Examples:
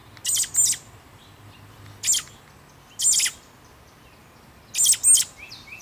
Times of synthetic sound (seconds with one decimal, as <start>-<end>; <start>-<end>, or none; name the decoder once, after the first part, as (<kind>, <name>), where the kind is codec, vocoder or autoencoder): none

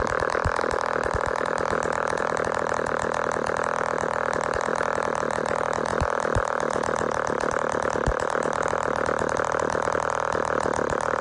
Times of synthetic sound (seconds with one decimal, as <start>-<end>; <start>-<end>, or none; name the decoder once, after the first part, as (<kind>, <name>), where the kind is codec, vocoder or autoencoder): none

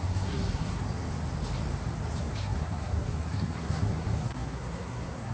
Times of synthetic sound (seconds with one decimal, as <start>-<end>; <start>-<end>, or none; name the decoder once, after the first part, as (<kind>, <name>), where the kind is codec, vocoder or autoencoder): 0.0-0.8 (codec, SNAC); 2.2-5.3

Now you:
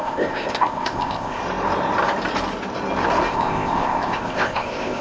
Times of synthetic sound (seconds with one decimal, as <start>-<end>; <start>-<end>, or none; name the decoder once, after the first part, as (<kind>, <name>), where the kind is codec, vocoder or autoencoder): 0.0-1.4 (codec, ZipCodec); 3.3-5.0